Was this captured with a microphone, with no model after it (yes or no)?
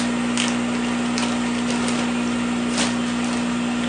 yes